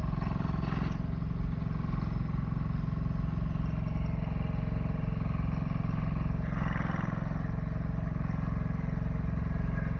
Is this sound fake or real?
real